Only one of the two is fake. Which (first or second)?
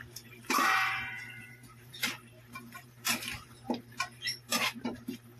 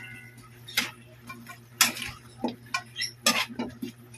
first